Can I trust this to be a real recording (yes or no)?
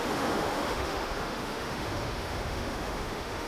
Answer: no